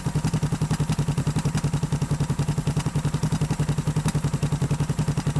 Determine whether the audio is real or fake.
real